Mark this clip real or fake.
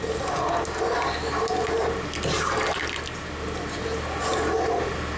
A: real